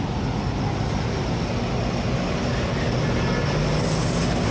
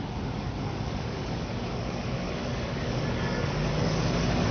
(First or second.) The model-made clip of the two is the second